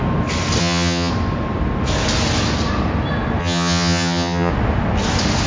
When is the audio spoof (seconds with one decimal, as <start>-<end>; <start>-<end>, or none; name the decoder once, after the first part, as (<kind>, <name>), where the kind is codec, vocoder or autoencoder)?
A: 0.6-1.1 (vocoder, HiFi-GAN); 3.4-4.5